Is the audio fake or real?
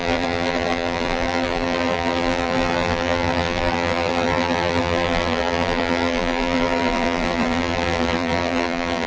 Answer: fake